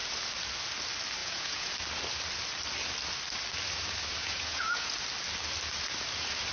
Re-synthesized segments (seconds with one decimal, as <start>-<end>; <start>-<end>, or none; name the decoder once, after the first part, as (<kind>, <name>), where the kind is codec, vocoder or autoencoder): 1.2-1.7 (vocoder, Vocos); 4.2-4.9